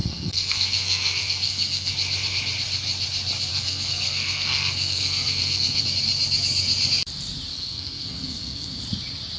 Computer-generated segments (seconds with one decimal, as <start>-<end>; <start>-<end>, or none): 0.0-1.9; 3.5-5.8; 7.5-8.8